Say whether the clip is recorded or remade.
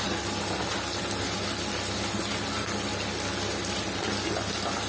recorded